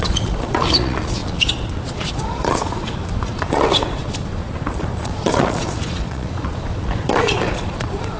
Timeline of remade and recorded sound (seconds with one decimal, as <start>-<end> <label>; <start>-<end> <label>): 0.0-8.2 remade